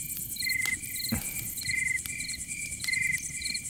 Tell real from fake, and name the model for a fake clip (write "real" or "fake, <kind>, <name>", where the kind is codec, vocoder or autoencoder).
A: real